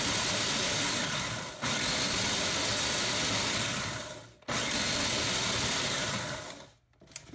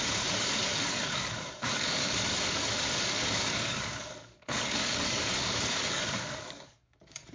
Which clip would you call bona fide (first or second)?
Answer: first